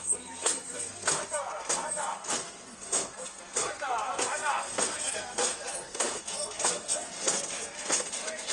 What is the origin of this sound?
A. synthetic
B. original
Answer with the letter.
A